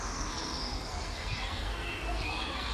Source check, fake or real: fake